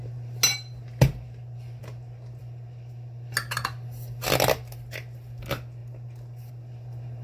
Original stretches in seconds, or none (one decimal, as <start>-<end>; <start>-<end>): 0.0-7.2